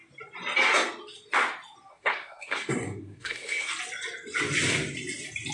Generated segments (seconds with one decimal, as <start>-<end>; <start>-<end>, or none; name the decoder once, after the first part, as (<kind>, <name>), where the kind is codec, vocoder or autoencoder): 1.9-3.7 (codec, SNAC)